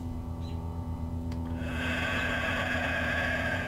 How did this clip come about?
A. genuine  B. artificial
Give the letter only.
B